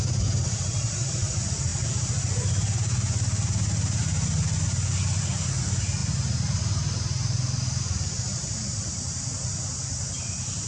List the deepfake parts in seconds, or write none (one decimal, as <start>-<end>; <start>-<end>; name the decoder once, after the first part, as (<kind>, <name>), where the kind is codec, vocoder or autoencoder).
none